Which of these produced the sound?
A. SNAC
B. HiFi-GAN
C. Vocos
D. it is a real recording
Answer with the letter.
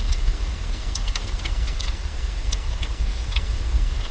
A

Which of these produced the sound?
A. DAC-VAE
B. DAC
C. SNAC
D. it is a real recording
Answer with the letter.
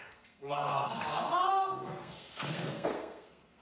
C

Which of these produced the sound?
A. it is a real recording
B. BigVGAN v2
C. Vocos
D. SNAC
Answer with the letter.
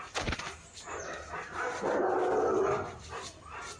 A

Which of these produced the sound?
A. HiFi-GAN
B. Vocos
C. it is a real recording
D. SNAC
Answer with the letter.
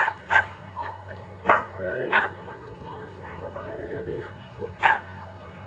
D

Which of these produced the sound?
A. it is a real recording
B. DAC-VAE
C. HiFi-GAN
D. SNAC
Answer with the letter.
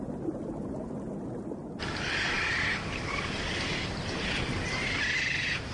A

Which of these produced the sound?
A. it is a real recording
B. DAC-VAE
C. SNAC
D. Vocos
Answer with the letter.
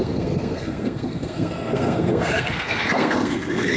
C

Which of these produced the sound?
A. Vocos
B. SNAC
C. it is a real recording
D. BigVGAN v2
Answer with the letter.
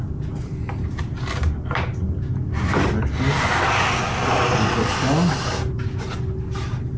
C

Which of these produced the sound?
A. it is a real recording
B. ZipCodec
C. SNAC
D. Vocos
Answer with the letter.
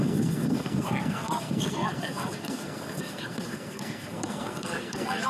C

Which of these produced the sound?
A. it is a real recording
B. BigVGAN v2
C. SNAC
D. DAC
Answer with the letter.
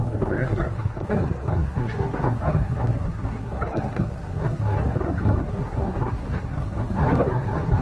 C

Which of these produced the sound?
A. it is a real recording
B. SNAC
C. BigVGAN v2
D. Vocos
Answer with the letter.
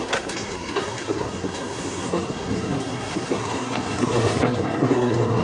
B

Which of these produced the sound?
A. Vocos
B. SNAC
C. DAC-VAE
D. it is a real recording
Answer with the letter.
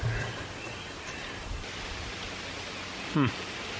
D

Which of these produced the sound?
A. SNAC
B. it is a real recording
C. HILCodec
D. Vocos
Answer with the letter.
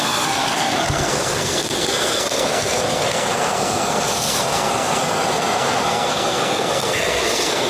A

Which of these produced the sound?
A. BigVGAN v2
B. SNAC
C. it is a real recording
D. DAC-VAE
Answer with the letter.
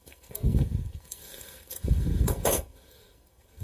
B